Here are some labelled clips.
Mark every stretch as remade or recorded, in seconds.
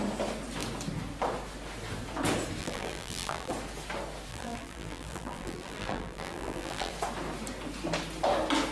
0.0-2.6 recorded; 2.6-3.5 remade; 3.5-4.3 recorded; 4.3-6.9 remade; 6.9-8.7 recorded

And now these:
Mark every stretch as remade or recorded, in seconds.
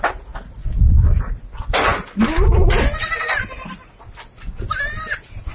0.0-5.5 recorded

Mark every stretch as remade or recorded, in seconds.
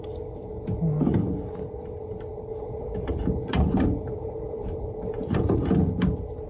0.0-2.5 recorded; 2.5-5.7 remade; 5.7-6.5 recorded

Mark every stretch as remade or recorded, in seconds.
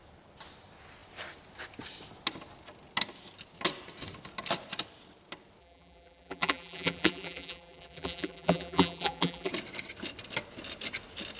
0.0-5.6 recorded; 5.6-9.5 remade; 9.5-11.4 recorded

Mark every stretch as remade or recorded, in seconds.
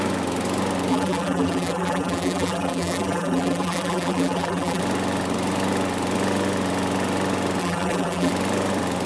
0.0-0.9 recorded; 0.9-4.8 remade; 4.8-7.6 recorded; 7.6-8.3 remade; 8.3-9.1 recorded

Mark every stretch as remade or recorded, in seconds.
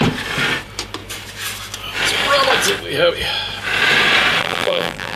0.0-4.4 recorded; 4.4-5.2 remade